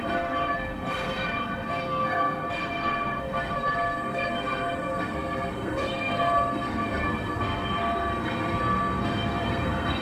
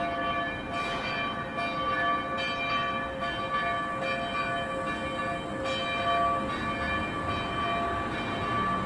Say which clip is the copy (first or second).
first